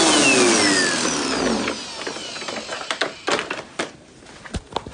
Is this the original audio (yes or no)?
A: yes